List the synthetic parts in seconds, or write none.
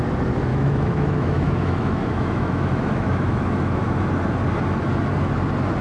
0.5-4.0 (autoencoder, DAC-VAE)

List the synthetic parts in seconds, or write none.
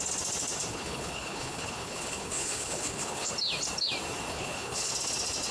0.7-3.3 (codec, HILCodec); 4.3-4.9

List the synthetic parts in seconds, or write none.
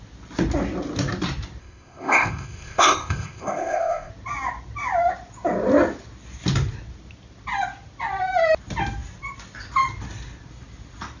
1.6-4.1 (codec, ZipCodec)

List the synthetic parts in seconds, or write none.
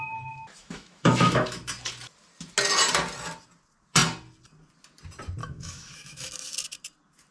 0.6-1.6 (autoencoder, DAC-VAE); 5.4-6.3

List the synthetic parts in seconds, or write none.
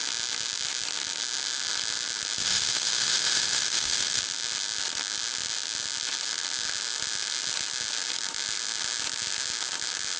2.4-4.2 (autoencoder, DAC-VAE)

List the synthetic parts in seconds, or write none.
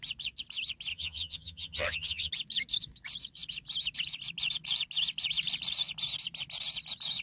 0.9-2.3 (vocoder, HiFi-GAN)